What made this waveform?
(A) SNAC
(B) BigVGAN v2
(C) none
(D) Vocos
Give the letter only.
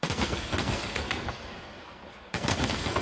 A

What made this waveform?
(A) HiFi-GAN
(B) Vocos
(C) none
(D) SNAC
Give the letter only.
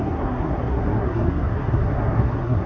D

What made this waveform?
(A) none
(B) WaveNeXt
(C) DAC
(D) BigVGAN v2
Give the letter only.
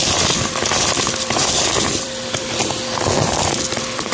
D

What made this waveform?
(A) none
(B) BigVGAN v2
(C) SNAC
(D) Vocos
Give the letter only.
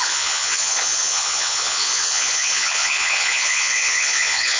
D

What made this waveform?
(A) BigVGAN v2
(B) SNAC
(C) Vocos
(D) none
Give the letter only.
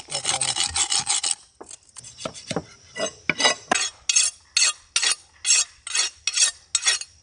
D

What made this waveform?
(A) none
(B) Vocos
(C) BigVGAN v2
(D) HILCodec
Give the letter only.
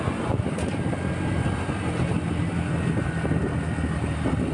A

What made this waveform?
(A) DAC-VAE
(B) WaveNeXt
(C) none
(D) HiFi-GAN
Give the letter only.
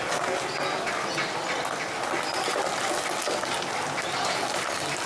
C